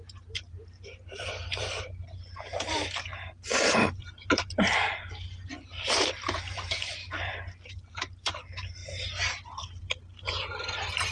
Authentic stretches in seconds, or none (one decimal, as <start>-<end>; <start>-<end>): 8.8-9.6